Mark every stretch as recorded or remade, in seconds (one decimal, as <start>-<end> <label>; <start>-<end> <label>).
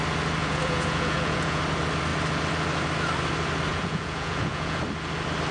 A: 0.0-0.4 recorded; 0.4-1.6 remade; 1.6-3.7 recorded; 3.7-4.8 remade; 4.8-5.5 recorded